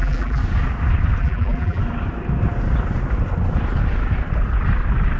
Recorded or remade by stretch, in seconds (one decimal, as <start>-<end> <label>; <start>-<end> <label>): 0.0-0.4 remade; 0.4-1.2 recorded; 1.2-1.8 remade; 1.8-5.2 recorded